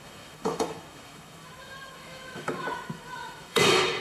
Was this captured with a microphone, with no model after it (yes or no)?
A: no